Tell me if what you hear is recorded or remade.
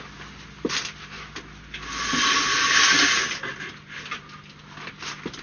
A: recorded